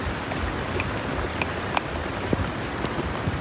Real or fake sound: real